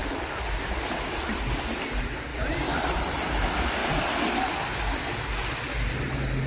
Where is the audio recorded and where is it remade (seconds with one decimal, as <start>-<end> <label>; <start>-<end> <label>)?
0.0-2.3 recorded; 2.3-3.3 remade; 3.3-6.5 recorded